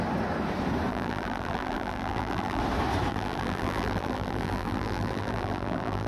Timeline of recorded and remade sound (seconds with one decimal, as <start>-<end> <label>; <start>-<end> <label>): 0.0-0.9 recorded; 0.9-2.6 remade; 2.6-3.1 recorded; 3.1-6.1 remade